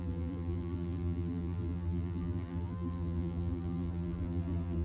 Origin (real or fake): fake